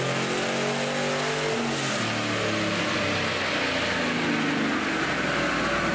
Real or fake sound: real